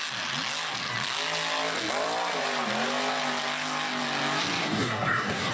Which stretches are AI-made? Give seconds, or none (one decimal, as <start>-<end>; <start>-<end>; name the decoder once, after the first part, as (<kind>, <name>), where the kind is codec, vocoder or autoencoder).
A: 4.6-5.5 (codec, SNAC)